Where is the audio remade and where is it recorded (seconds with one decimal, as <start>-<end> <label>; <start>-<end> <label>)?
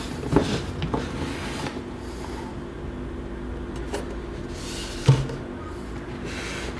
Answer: 0.0-6.8 recorded